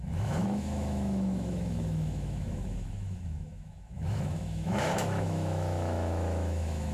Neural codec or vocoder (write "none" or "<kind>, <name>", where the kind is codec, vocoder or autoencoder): autoencoder, DAC-VAE